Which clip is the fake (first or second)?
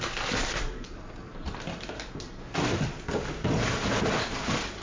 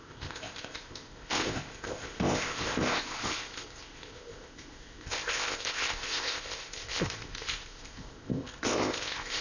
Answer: second